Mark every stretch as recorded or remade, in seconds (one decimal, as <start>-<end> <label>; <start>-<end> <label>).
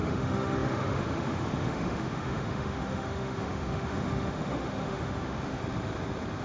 0.0-5.6 remade; 5.6-6.4 recorded